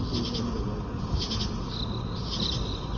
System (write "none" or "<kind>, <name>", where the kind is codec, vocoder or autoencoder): none